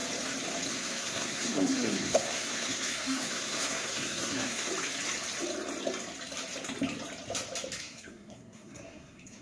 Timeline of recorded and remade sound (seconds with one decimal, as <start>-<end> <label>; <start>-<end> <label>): 0.0-0.7 recorded; 0.7-4.7 remade; 4.7-7.8 recorded; 7.8-9.4 remade